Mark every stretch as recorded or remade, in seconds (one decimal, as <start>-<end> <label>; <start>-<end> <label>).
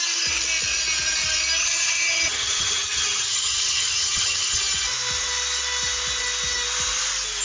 0.0-1.6 recorded; 1.6-4.6 remade; 4.6-7.4 recorded